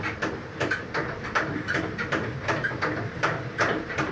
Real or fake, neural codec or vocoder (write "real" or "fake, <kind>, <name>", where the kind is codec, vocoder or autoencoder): fake, vocoder, BigVGAN v2